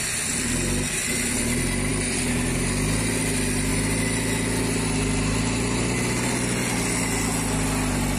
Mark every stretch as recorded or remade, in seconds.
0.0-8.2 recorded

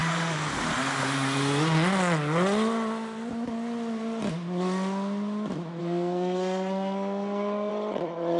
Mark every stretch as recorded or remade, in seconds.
0.0-5.8 recorded; 5.8-7.7 remade; 7.7-8.4 recorded

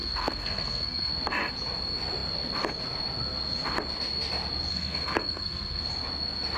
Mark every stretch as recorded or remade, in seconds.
0.0-1.1 remade; 1.1-4.7 recorded; 4.7-5.9 remade; 5.9-6.6 recorded

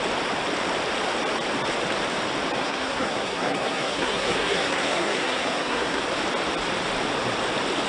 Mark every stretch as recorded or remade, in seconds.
0.0-2.6 recorded; 2.6-6.0 remade; 6.0-7.9 recorded

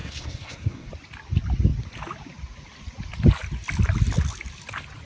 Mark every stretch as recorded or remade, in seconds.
0.0-0.9 remade; 0.9-5.1 recorded

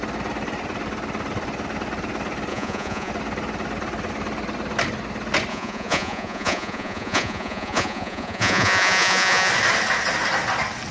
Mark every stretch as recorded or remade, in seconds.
0.0-2.5 recorded; 2.5-3.1 remade; 3.1-5.5 recorded; 5.5-9.5 remade; 9.5-10.9 recorded